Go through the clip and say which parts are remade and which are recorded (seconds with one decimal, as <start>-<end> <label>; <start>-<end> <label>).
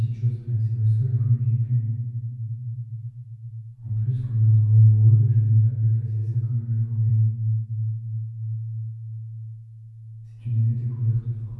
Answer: 0.0-11.6 recorded